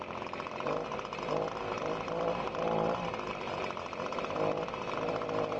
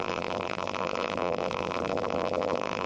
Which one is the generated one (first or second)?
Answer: second